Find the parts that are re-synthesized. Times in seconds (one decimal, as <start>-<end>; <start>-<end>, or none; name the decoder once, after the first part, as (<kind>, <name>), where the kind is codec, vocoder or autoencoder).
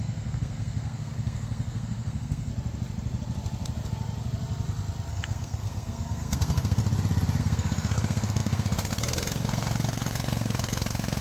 0.0-2.5 (codec, SNAC); 5.1-6.8; 7.4-11.2